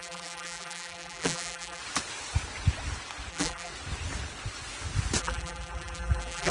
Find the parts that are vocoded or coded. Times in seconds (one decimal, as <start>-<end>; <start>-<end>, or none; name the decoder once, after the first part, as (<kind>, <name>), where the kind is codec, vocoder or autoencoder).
0.0-1.8 (vocoder, BigVGAN v2); 3.3-3.7; 5.2-6.5